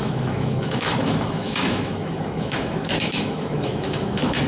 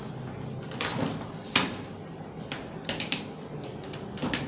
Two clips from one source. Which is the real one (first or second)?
second